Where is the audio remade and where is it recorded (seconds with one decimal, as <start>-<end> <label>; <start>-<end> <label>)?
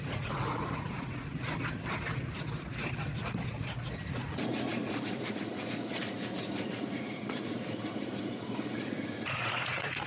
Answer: 0.0-1.3 remade; 1.3-4.1 recorded; 4.1-10.1 remade